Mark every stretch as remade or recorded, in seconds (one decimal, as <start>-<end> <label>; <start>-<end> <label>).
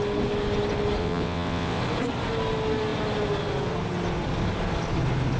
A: 0.0-1.0 recorded; 1.0-1.8 remade; 1.8-5.4 recorded